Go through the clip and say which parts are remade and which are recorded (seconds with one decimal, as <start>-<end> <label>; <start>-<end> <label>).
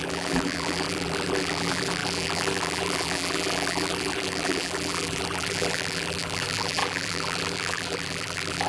0.0-8.7 remade